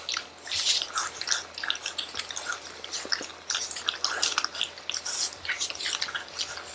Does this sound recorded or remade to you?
recorded